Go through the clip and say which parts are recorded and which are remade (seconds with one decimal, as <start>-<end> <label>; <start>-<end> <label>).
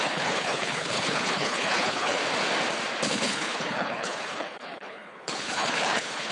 0.0-2.2 remade; 2.2-3.1 recorded; 3.1-6.3 remade